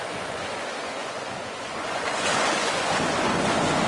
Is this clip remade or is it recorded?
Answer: remade